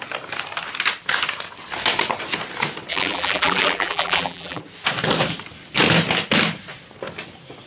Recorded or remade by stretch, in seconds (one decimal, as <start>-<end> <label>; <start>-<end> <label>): 0.0-2.9 recorded; 2.9-4.6 remade; 4.6-7.7 recorded

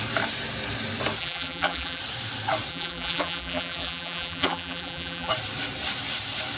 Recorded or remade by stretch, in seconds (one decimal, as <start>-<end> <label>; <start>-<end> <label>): 0.0-1.2 recorded; 1.2-2.0 remade; 2.0-2.7 recorded; 2.7-5.3 remade; 5.3-6.6 recorded

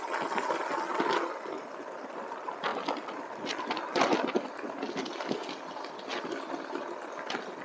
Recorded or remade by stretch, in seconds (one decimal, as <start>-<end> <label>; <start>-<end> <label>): 0.0-7.6 remade